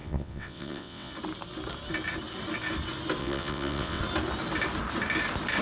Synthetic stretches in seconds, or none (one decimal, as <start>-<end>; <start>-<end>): 0.0-1.1; 3.2-4.0